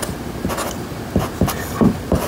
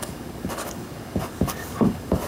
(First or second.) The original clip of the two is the first